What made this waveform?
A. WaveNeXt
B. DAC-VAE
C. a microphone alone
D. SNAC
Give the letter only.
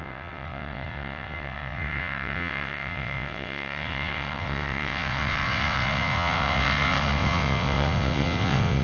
A